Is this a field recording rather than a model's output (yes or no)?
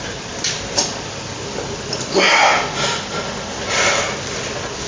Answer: yes